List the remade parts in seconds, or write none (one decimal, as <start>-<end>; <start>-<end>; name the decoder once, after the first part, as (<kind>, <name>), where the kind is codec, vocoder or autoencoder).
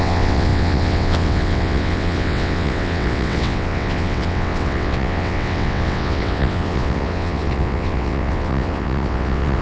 0.0-9.6 (vocoder, WaveNeXt)